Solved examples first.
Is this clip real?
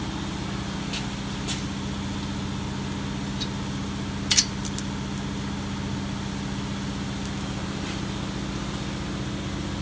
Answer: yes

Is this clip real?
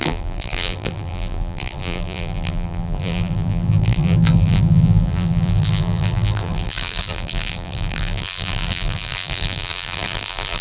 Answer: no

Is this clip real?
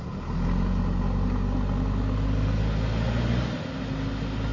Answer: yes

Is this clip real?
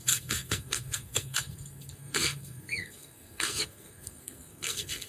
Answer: no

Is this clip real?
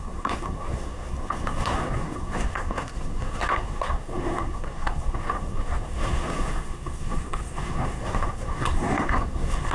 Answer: no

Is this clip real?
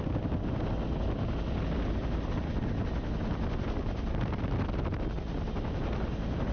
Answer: yes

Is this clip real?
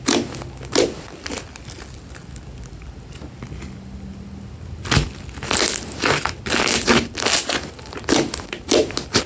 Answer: yes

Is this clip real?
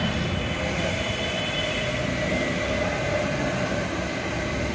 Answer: yes